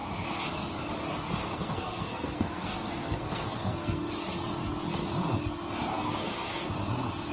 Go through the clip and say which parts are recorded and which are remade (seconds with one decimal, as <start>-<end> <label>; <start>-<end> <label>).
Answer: 0.0-1.4 recorded; 1.4-4.1 remade; 4.1-5.9 recorded; 5.9-6.7 remade; 6.7-7.3 recorded